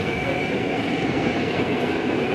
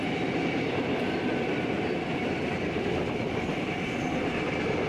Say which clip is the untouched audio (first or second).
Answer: second